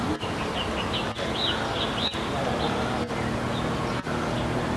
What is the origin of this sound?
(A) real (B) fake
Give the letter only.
A